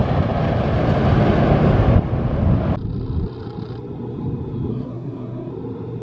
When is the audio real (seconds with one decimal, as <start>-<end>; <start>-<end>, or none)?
0.0-4.7; 5.5-6.0